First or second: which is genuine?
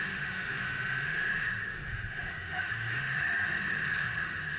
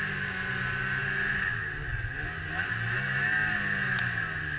second